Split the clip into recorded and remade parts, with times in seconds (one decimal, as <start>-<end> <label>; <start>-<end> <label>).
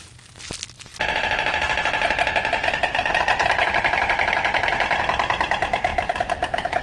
0.0-6.8 recorded